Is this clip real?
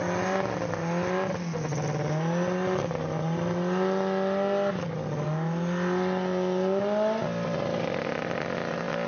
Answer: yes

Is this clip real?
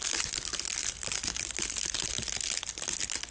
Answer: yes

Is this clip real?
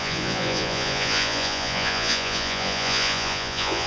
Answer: no